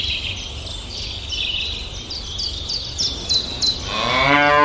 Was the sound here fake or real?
real